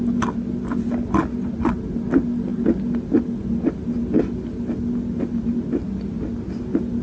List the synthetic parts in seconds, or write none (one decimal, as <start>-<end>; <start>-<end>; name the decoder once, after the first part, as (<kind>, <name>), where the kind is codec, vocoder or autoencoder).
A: none